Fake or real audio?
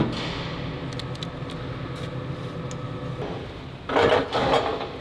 real